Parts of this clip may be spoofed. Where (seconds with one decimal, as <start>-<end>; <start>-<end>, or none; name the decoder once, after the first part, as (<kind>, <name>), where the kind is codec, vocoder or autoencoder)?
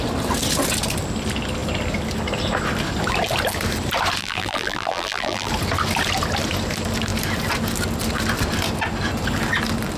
4.2-5.5 (vocoder, BigVGAN v2)